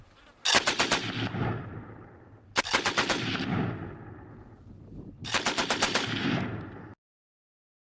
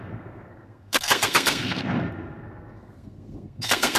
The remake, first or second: second